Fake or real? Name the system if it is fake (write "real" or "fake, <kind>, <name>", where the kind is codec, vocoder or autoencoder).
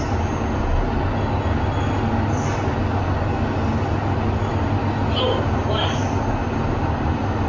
real